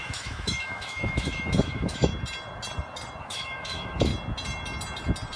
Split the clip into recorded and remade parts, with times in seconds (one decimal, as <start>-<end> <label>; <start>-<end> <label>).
0.0-2.1 remade; 2.1-3.2 recorded; 3.2-4.1 remade; 4.1-5.4 recorded